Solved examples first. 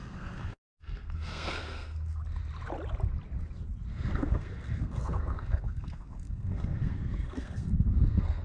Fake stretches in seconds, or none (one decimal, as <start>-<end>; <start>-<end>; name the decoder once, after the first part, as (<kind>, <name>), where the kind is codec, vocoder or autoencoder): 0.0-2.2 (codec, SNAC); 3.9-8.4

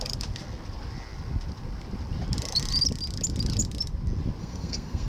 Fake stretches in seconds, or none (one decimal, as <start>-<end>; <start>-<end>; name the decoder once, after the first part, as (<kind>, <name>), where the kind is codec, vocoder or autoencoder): 4.4-5.1 (codec, SNAC)

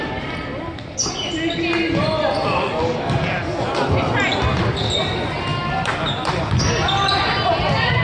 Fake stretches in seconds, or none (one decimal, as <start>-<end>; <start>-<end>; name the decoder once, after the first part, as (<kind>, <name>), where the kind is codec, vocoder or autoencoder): none